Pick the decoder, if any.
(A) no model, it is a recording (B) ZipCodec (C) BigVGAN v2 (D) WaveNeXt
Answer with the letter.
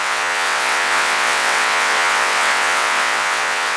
D